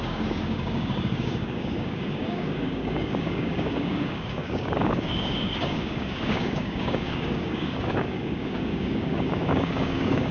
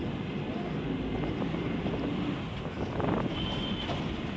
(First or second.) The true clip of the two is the second